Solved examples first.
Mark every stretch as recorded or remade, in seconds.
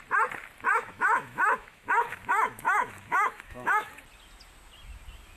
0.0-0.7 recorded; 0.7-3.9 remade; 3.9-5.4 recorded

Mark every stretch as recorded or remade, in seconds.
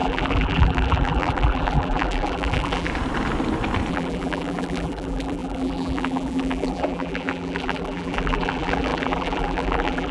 0.0-2.9 remade; 2.9-3.9 recorded; 3.9-10.1 remade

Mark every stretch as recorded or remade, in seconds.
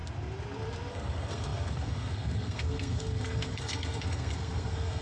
0.0-0.9 recorded; 0.9-5.0 remade